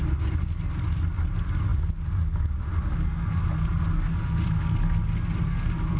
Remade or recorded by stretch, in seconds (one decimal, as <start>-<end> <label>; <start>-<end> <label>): 0.0-6.0 recorded